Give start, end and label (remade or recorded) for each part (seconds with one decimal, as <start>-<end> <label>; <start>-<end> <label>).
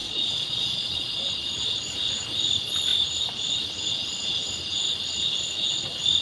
0.0-1.2 remade; 1.2-6.2 recorded